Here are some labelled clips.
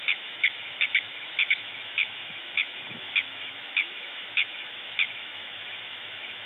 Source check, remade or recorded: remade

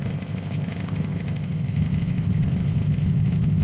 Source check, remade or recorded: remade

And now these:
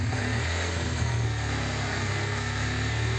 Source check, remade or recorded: remade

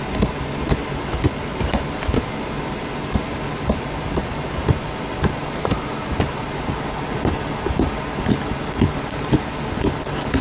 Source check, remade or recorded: recorded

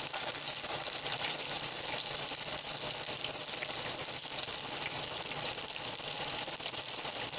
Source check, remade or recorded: recorded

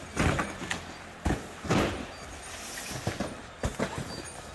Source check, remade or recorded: recorded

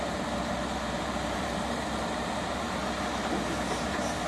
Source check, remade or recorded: remade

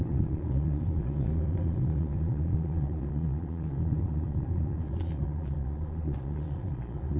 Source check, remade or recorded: remade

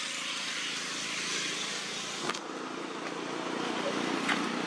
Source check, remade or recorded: recorded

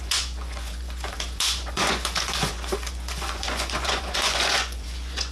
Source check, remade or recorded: remade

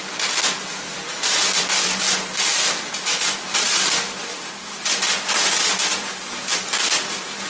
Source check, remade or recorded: remade